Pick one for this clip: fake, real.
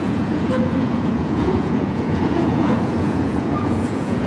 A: fake